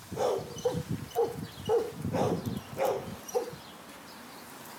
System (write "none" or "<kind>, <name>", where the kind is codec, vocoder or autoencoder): none